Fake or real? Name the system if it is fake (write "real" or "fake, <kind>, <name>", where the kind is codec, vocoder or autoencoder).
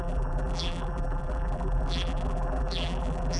fake, vocoder, BigVGAN v2